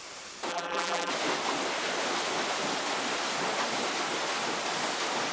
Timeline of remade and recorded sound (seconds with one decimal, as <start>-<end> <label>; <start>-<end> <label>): 0.0-0.5 recorded; 0.5-1.1 remade; 1.1-5.3 recorded